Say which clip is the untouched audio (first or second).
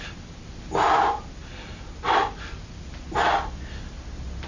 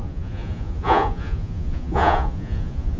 first